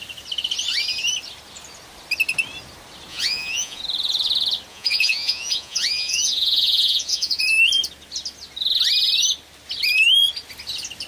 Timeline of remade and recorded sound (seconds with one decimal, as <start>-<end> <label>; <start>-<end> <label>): 0.0-3.1 recorded; 3.1-3.8 remade; 3.8-4.7 recorded; 4.7-7.4 remade; 7.4-11.1 recorded

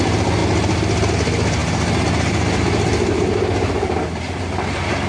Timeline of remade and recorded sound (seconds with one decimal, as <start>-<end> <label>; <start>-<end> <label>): 0.0-1.6 recorded; 1.6-5.1 remade

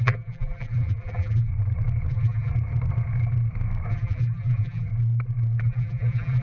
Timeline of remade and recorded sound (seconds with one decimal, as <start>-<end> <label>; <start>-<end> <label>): 0.0-1.5 remade; 1.5-2.1 recorded; 2.1-2.5 remade; 2.5-3.9 recorded; 3.9-4.9 remade; 4.9-5.6 recorded; 5.6-6.4 remade

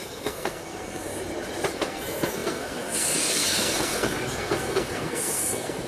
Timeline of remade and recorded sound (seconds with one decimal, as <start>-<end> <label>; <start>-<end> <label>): 0.0-1.1 remade; 1.1-1.7 recorded; 1.7-5.9 remade

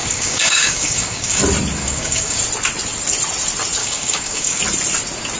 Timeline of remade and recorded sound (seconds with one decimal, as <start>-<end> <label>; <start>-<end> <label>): 0.0-1.4 remade; 1.4-1.8 recorded; 1.8-2.4 remade; 2.4-3.8 recorded; 3.8-4.6 remade; 4.6-5.4 recorded

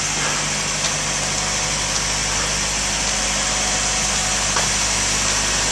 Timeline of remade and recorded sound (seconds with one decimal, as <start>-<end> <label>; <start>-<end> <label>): 0.0-5.7 recorded